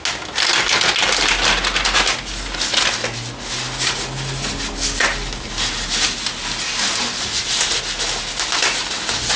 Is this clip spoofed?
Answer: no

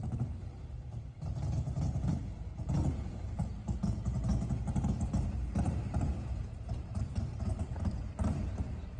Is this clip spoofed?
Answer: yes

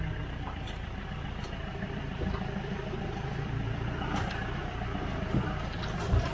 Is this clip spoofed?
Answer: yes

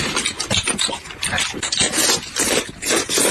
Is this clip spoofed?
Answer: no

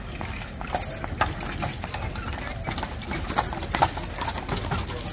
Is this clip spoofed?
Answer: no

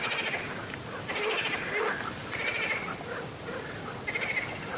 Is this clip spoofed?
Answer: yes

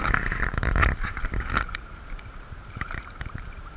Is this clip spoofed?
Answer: yes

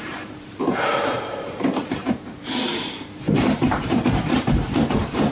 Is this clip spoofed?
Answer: yes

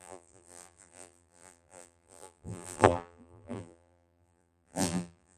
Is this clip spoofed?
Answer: yes